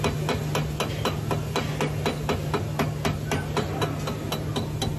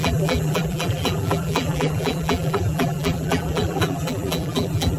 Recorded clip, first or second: first